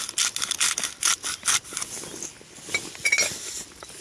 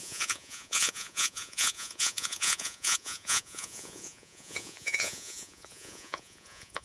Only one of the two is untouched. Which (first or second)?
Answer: first